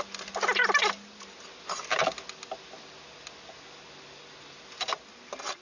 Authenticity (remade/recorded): recorded